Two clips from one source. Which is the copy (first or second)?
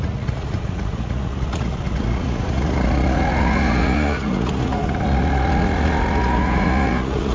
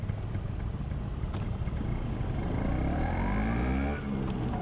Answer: first